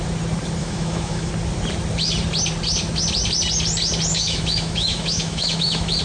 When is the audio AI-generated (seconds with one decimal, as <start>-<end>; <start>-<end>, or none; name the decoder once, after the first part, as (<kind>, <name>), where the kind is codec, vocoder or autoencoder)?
0.6-1.3 (autoencoder, DAC-VAE); 4.1-6.0